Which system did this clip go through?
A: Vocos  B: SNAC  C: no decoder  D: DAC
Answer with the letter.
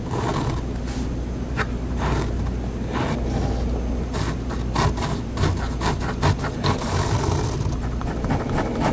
C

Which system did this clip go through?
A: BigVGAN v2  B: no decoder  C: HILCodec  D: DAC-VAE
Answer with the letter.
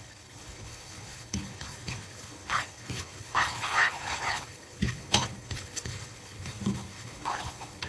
C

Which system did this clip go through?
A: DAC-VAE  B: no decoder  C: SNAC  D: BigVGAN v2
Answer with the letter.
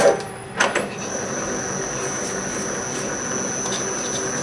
B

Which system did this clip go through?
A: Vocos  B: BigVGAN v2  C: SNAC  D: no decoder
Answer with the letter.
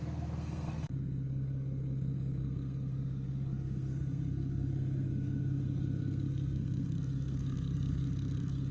C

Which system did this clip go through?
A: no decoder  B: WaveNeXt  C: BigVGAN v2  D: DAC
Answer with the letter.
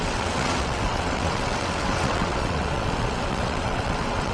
B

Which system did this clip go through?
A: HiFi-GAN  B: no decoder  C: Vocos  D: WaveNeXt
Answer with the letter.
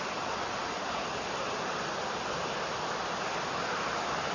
B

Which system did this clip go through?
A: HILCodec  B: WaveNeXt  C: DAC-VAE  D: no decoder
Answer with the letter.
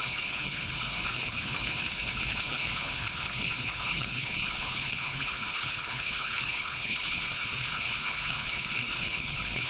A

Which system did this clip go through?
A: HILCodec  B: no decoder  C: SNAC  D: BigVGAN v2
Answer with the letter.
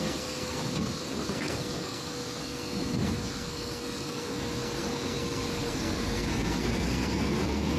C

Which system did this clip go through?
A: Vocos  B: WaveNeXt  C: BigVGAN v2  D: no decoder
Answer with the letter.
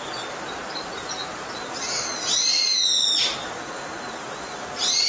D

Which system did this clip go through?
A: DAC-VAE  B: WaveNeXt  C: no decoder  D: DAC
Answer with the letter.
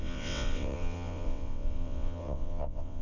B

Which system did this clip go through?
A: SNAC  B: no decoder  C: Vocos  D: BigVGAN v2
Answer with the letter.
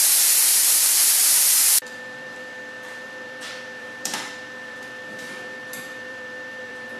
D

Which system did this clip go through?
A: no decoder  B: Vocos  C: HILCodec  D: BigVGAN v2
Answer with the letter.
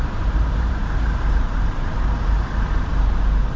D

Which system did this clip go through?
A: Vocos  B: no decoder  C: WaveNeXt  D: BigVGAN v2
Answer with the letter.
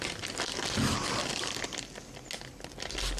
B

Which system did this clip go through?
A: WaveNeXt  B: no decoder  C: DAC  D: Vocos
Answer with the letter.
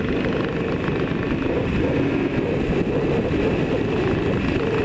B